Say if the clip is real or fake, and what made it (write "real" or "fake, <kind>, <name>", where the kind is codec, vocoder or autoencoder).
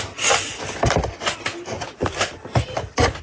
real